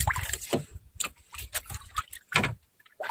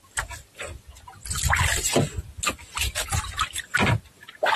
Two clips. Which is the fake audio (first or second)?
first